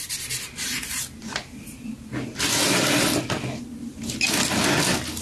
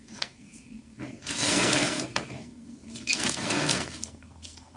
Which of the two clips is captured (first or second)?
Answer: first